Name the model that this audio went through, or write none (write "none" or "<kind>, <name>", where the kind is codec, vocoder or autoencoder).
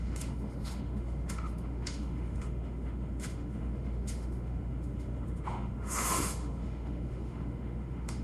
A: autoencoder, DAC-VAE